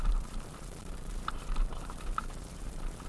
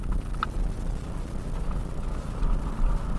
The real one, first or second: second